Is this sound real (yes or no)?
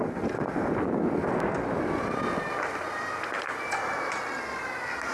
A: yes